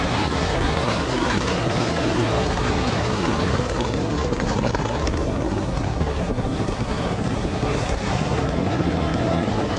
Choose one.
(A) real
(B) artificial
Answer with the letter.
B